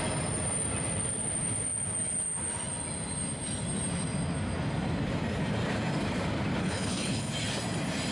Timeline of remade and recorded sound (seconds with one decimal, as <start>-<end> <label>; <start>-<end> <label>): 0.0-6.6 recorded; 6.6-7.3 remade; 7.3-8.1 recorded

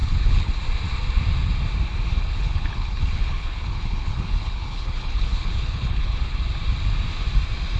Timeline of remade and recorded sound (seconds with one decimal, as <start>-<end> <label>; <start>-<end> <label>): 0.0-0.5 remade; 0.5-2.1 recorded; 2.1-6.4 remade; 6.4-7.8 recorded

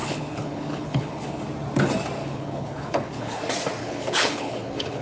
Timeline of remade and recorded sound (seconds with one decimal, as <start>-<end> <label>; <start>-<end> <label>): 0.0-1.4 remade; 1.4-2.2 recorded; 2.2-3.4 remade; 3.4-3.8 recorded; 3.8-5.0 remade

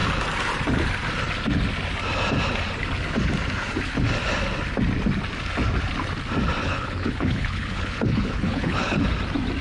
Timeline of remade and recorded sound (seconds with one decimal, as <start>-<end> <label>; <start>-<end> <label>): 0.0-6.6 recorded; 6.6-9.0 remade; 9.0-9.6 recorded

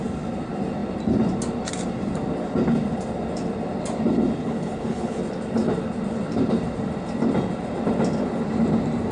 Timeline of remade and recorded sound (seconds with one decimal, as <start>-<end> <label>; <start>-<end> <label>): 0.0-4.4 recorded; 4.4-5.2 remade; 5.2-9.1 recorded